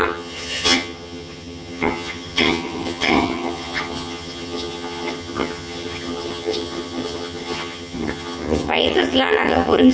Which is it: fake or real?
fake